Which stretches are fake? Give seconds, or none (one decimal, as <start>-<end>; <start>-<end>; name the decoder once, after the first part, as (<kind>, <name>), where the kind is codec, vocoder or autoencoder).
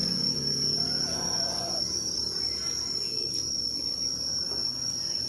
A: 0.0-1.8 (vocoder, Vocos); 4.6-5.3